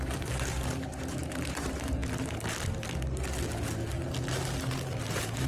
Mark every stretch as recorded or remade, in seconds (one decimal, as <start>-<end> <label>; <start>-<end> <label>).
0.0-2.0 remade; 2.0-5.1 recorded; 5.1-5.5 remade